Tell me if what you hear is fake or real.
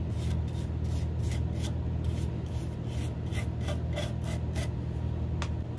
real